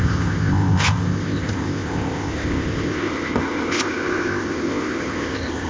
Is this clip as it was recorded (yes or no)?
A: no